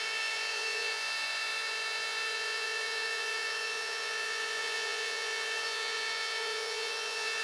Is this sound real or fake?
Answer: fake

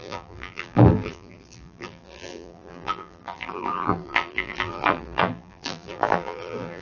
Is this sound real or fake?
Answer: fake